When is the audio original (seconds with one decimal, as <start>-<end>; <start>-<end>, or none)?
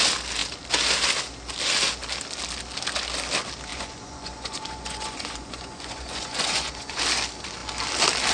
0.0-3.7; 7.0-8.3